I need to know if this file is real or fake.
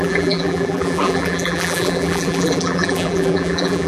fake